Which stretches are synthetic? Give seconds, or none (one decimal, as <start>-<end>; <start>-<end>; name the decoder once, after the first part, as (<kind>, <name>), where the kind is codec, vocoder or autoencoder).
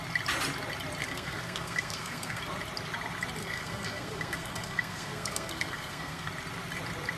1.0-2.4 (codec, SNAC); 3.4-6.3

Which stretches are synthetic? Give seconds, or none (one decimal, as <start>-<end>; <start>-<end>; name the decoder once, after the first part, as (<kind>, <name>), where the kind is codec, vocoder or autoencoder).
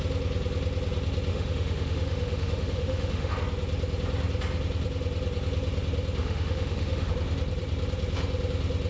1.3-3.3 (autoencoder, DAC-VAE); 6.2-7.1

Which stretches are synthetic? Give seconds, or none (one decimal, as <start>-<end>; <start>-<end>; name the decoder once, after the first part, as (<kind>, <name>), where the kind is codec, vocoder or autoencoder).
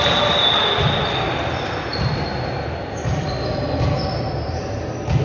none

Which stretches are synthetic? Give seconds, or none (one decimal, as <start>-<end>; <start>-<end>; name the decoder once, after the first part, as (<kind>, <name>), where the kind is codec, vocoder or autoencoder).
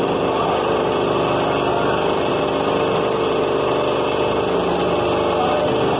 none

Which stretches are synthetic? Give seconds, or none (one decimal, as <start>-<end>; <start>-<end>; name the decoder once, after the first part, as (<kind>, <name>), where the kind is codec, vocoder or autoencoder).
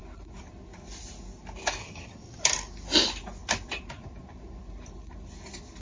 1.8-2.4 (vocoder, HiFi-GAN)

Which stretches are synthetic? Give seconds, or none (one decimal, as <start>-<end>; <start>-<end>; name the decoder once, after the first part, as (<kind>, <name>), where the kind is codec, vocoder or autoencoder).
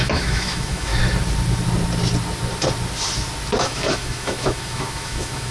0.0-0.9 (autoencoder, DAC-VAE); 3.6-5.5